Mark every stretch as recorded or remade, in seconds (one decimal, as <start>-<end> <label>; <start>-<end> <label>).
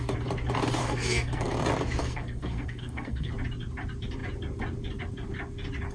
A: 0.0-0.8 recorded; 0.8-1.5 remade; 1.5-2.0 recorded; 2.0-3.3 remade; 3.3-5.9 recorded